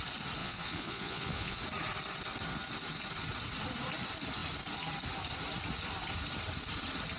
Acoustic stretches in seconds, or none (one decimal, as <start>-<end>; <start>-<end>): 0.0-0.4; 1.6-7.2